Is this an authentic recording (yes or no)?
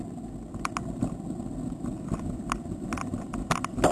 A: yes